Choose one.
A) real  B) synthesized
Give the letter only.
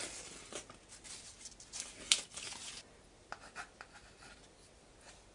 A